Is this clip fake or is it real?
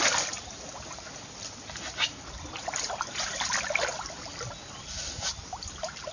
real